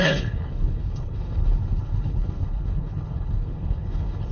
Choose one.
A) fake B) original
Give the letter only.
A